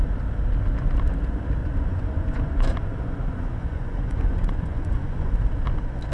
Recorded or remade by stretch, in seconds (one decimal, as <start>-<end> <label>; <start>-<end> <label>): 0.0-1.6 recorded; 1.6-5.3 remade; 5.3-6.1 recorded